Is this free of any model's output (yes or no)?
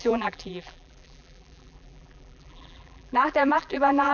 no